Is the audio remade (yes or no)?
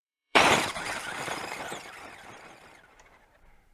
yes